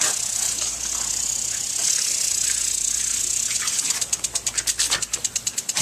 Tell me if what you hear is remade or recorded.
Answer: recorded